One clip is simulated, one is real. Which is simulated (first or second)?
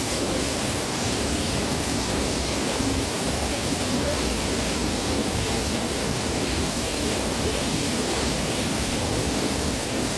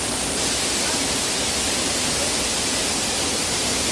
first